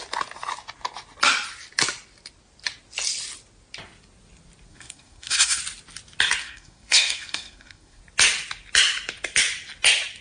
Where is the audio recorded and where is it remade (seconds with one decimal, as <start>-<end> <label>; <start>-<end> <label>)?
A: 0.0-4.7 recorded; 4.7-5.6 remade; 5.6-6.4 recorded; 6.4-8.0 remade; 8.0-10.2 recorded